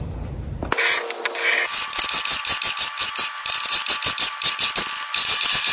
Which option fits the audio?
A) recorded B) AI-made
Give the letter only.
A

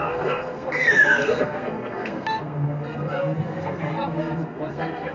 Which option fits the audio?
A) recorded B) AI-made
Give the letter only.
B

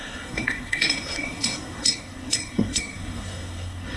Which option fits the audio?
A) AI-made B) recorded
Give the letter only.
A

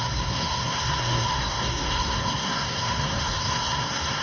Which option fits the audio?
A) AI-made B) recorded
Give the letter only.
A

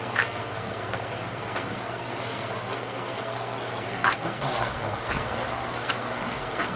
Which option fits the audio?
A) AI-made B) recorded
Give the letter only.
A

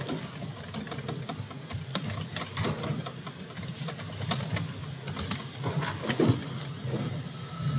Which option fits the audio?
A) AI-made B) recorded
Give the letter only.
B